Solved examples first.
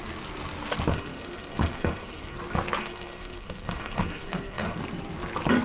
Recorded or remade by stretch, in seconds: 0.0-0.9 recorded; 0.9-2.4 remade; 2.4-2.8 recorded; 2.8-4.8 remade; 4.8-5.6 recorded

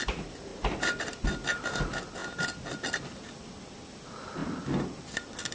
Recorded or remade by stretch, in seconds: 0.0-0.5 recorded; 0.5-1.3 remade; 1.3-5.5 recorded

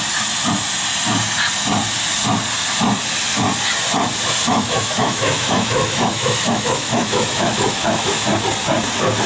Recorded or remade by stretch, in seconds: 0.0-4.5 recorded; 4.5-8.3 remade; 8.3-9.3 recorded

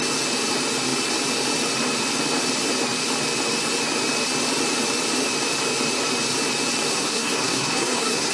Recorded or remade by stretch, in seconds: 0.0-6.9 recorded; 6.9-8.3 remade